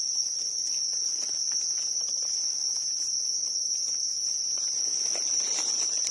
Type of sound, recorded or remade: recorded